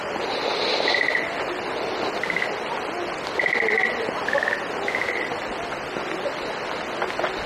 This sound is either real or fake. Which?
real